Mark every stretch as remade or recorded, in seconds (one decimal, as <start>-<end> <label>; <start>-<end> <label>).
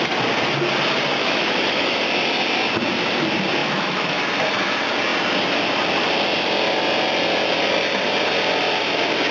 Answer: 0.0-1.2 recorded; 1.2-2.0 remade; 2.0-3.6 recorded; 3.6-4.2 remade; 4.2-9.3 recorded